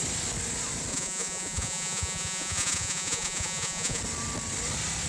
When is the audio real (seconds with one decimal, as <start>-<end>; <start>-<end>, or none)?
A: 0.0-0.9; 4.0-5.1